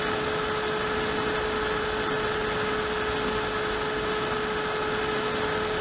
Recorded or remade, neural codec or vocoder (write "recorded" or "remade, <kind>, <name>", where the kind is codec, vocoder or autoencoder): recorded